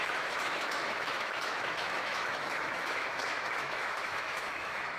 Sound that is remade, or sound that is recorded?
remade